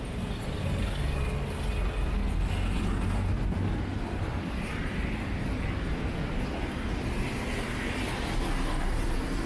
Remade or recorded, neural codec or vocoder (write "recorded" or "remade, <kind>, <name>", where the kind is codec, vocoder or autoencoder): recorded